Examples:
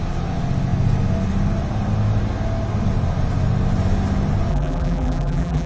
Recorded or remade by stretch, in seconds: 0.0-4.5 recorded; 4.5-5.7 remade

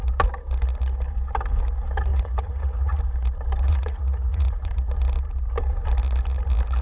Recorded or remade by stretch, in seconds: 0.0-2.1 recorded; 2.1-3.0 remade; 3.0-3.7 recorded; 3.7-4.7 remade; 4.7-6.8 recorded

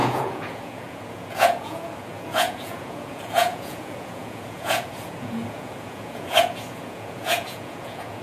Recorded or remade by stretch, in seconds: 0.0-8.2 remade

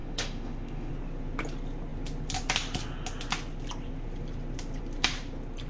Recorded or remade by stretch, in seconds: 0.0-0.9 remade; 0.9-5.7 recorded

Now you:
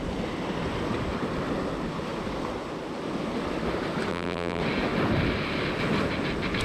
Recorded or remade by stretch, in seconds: 0.0-4.1 recorded; 4.1-4.6 remade; 4.6-6.6 recorded

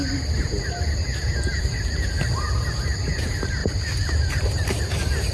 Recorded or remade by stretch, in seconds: 0.0-1.5 recorded; 1.5-2.1 remade; 2.1-3.6 recorded; 3.6-4.8 remade; 4.8-5.3 recorded

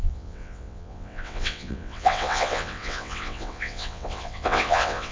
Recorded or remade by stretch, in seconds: 0.0-5.1 remade